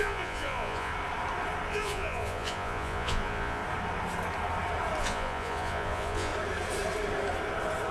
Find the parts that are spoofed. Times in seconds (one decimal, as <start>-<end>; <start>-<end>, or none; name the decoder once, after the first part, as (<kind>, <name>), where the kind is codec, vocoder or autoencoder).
0.0-0.9 (vocoder, Vocos); 1.7-3.6; 5.0-6.3